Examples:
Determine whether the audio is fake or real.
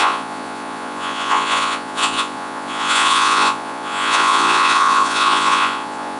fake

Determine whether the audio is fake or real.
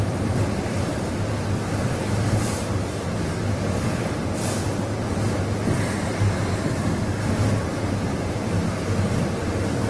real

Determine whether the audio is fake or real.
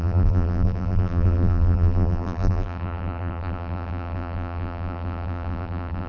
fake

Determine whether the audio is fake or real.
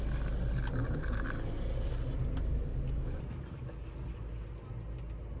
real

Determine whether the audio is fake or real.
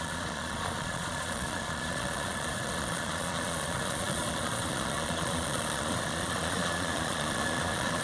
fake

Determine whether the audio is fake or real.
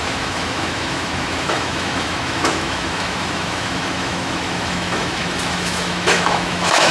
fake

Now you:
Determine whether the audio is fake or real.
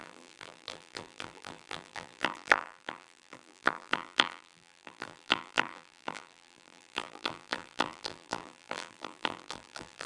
fake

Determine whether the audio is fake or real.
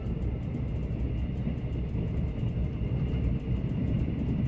real